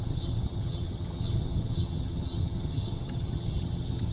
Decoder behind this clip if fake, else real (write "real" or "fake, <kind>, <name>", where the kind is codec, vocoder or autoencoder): fake, vocoder, HiFi-GAN